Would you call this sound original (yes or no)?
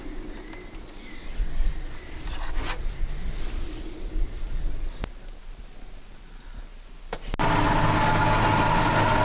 yes